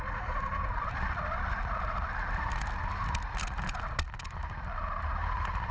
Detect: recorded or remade recorded